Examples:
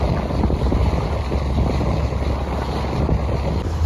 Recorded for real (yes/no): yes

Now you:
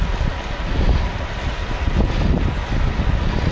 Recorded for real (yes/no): yes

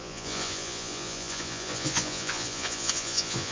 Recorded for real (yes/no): no